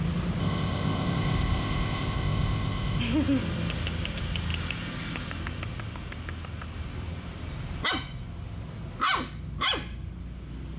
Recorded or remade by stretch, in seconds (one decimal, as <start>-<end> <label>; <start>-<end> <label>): 0.0-0.4 recorded; 0.4-3.0 remade; 3.0-10.8 recorded